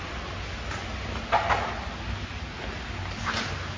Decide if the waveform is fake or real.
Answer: real